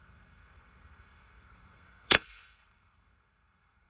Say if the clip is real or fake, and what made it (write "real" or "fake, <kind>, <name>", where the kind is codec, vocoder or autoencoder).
fake, codec, SNAC